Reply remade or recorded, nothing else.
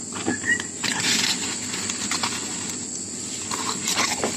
recorded